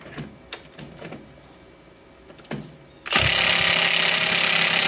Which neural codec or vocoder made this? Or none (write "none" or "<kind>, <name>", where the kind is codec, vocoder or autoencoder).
none